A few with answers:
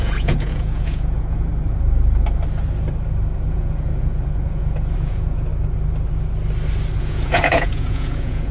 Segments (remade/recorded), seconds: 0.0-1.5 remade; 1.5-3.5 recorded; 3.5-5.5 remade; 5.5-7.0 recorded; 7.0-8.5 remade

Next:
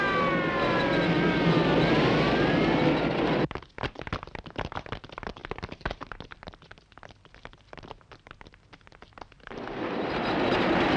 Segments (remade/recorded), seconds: 0.0-11.0 recorded

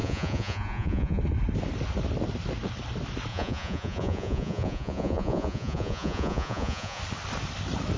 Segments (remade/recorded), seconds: 0.0-1.2 remade; 1.2-3.3 recorded; 3.3-7.0 remade; 7.0-8.0 recorded

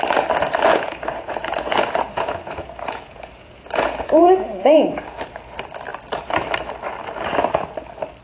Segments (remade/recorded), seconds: 0.0-0.7 recorded; 0.7-5.1 remade; 5.1-8.2 recorded

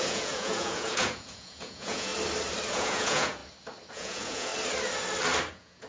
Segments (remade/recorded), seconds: 0.0-2.1 remade; 2.1-2.7 recorded; 2.7-3.4 remade; 3.4-3.9 recorded; 3.9-4.5 remade; 4.5-5.5 recorded; 5.5-5.9 remade

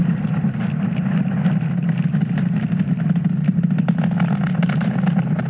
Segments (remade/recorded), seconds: 0.0-5.5 recorded

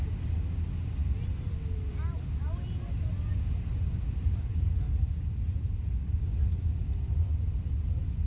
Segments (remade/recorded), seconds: 0.0-8.3 recorded

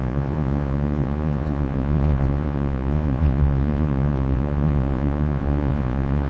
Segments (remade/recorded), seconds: 0.0-6.3 remade